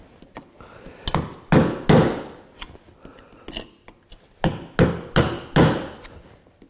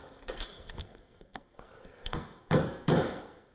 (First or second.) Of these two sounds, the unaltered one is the first